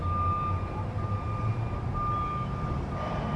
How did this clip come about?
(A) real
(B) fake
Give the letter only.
A